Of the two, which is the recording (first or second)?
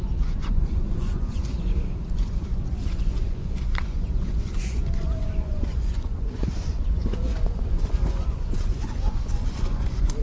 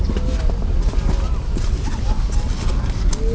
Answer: second